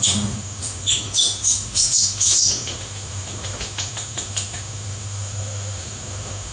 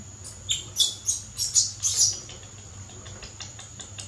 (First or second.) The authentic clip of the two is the second